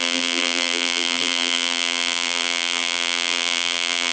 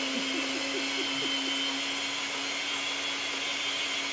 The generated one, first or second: first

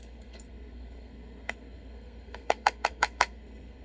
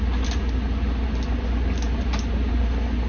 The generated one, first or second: first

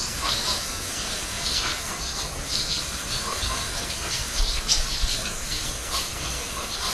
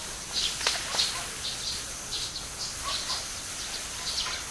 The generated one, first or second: first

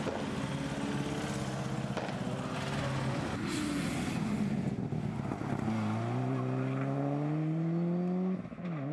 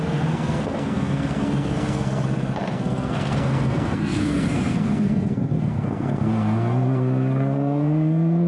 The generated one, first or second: second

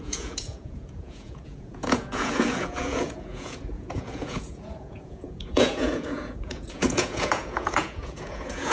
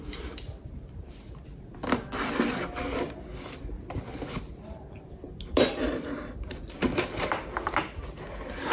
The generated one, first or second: first